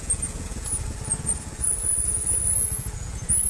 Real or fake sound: fake